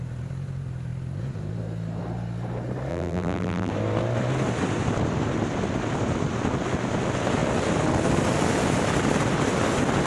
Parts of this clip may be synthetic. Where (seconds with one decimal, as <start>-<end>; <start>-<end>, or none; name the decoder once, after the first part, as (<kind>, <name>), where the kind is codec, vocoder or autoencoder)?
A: 2.9-3.7 (vocoder, BigVGAN v2)